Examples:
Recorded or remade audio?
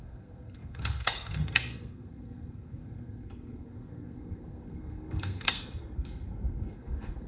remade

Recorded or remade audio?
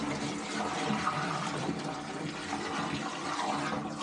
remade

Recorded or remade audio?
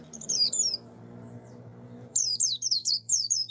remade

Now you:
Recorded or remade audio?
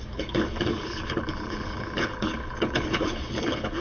remade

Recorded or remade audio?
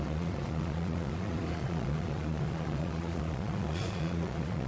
remade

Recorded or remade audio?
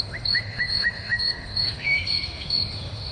remade